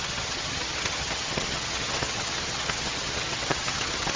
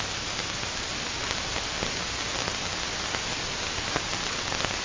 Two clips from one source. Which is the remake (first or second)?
first